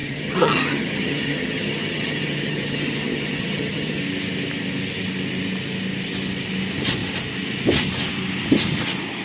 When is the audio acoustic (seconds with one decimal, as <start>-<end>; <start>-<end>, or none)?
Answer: 4.0-9.2